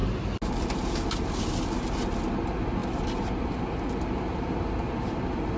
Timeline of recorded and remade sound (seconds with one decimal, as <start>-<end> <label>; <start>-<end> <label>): 0.0-5.6 recorded